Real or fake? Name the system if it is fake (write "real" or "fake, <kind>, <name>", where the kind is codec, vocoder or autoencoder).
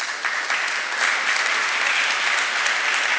real